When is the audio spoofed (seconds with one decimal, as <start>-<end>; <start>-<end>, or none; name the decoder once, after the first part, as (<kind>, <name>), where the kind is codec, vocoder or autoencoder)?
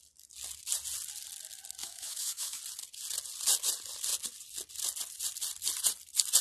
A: 1.8-2.6 (autoencoder, DAC-VAE)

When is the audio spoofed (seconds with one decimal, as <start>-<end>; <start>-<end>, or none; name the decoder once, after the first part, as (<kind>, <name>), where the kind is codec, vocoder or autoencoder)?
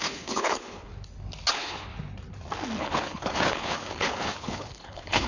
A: 0.0-0.9 (codec, HILCodec); 1.5-1.9; 2.8-5.3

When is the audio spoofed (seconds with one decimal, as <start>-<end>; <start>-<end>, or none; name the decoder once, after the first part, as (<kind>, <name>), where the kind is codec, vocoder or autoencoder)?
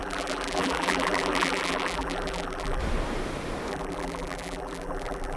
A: 0.0-2.8 (vocoder, BigVGAN v2); 3.7-5.4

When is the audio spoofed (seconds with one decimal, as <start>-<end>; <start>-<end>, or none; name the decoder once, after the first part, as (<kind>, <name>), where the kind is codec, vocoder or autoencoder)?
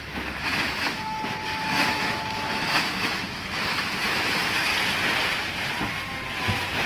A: 0.0-4.7 (autoencoder, DAC-VAE); 6.4-6.9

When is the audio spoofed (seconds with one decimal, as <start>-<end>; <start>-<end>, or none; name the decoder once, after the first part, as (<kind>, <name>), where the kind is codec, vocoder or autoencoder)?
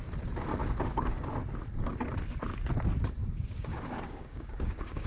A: 0.6-1.3 (codec, DAC); 3.2-5.1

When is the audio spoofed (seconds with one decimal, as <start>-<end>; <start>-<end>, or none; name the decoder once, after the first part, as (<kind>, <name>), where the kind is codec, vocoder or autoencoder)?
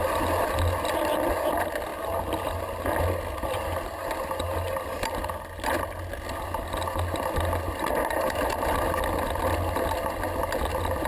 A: none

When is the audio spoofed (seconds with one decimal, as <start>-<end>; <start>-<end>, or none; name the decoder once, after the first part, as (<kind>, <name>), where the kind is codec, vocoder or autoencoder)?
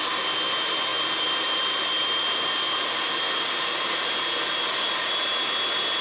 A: none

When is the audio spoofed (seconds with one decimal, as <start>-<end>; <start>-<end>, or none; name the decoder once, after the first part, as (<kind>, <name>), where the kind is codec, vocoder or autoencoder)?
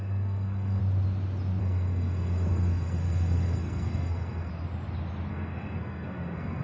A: 0.0-0.8 (codec, SNAC); 1.6-4.5; 5.3-6.6